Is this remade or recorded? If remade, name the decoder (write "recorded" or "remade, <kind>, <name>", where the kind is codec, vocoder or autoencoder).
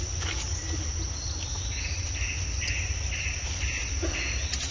recorded